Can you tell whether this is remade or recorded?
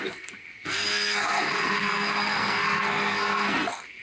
remade